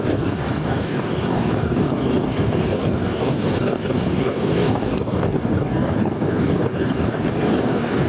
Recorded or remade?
remade